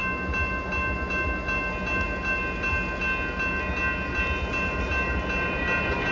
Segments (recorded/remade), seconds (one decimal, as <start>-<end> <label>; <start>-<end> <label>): 0.0-6.1 recorded